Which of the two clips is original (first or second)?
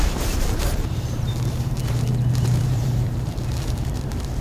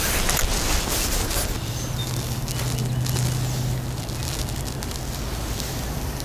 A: second